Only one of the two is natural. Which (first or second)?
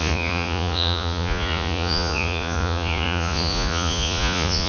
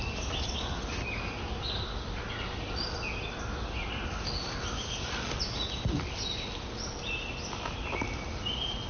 second